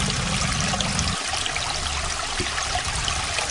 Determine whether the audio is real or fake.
real